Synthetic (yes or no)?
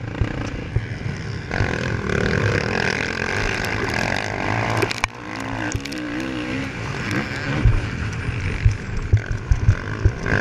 no